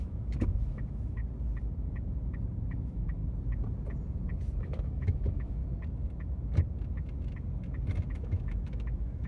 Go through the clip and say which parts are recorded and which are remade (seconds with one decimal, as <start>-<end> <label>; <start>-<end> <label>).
0.0-1.2 remade; 1.2-2.7 recorded; 2.7-3.2 remade; 3.2-4.6 recorded; 4.6-5.6 remade; 5.6-8.1 recorded; 8.1-9.3 remade